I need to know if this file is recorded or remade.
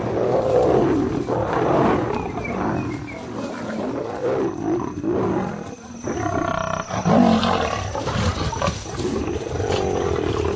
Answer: recorded